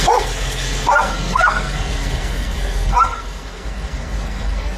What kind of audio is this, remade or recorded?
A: remade